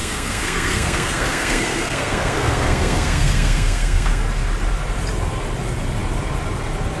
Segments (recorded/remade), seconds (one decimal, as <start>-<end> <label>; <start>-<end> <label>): 0.0-4.2 remade; 4.2-7.0 recorded